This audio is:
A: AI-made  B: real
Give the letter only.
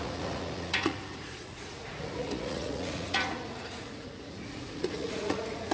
A